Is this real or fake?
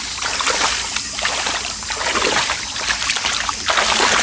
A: real